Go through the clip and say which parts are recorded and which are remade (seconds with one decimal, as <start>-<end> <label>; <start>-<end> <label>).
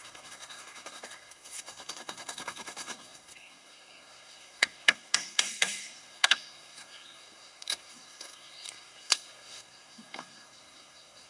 0.0-11.3 remade